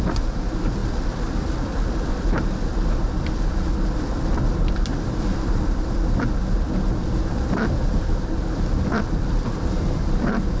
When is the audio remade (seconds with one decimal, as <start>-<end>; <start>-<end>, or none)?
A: 0.0-10.6